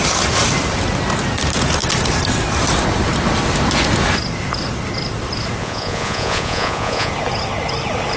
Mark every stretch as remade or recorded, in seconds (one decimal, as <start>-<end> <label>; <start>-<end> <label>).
0.0-5.6 recorded; 5.6-7.1 remade; 7.1-8.2 recorded